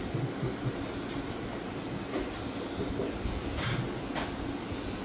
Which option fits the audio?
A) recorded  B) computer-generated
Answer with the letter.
B